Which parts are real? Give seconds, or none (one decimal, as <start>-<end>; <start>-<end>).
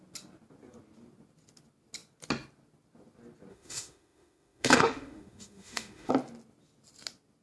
0.0-3.5; 6.1-7.4